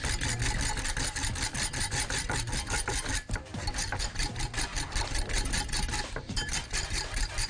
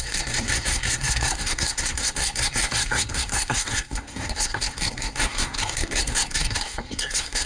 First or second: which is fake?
second